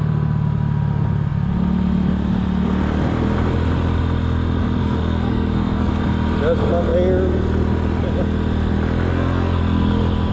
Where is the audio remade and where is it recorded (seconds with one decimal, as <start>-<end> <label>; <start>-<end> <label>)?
0.0-4.8 recorded; 4.8-5.9 remade; 5.9-9.1 recorded; 9.1-9.6 remade; 9.6-10.3 recorded